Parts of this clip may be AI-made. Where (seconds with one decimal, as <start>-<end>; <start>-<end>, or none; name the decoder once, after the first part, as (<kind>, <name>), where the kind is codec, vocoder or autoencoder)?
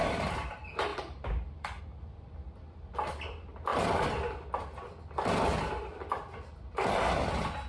0.9-1.8 (vocoder, BigVGAN v2); 3.7-4.3